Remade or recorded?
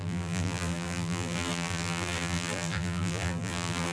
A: remade